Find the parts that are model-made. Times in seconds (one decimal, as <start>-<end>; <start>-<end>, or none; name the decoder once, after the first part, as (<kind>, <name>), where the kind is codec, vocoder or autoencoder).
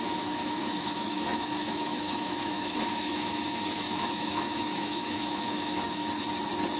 0.0-6.0 (autoencoder, DAC-VAE)